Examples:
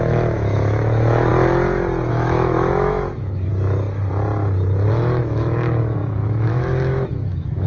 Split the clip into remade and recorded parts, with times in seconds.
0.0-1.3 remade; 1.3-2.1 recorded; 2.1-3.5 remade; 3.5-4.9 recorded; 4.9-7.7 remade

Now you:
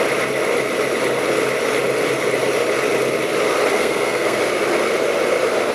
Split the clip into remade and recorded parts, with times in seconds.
0.0-3.7 recorded; 3.7-4.4 remade; 4.4-5.7 recorded

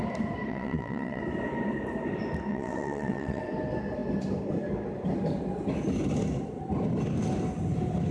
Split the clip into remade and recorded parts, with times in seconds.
0.0-0.5 recorded; 0.5-1.2 remade; 1.2-2.5 recorded; 2.5-3.4 remade; 3.4-8.1 recorded

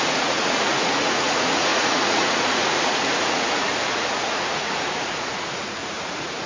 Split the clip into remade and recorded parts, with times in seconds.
0.0-6.5 remade

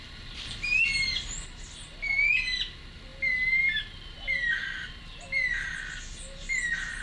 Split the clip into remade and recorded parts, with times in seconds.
0.0-7.0 recorded

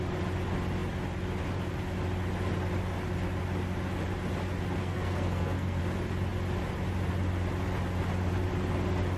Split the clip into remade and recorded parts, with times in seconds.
0.0-4.8 recorded; 4.8-5.8 remade; 5.8-9.2 recorded